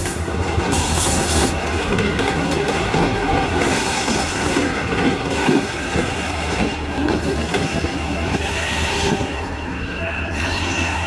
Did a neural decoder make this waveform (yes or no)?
yes